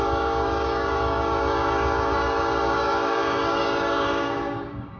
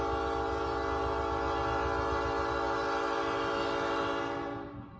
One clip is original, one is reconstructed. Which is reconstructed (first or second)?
first